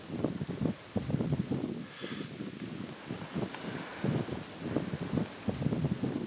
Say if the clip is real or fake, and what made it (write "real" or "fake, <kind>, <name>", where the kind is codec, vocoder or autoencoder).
real